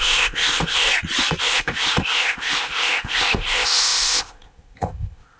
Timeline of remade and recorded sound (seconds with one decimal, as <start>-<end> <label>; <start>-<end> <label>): 0.0-0.9 remade; 0.9-1.4 recorded; 1.4-5.4 remade